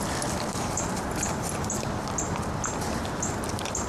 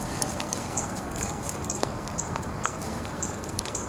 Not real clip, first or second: second